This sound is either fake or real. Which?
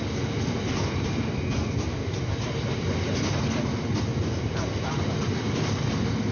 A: real